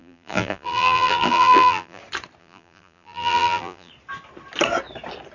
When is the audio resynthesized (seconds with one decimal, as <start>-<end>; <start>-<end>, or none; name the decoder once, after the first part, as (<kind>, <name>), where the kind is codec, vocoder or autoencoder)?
0.0-2.0 (vocoder, BigVGAN v2); 2.4-3.9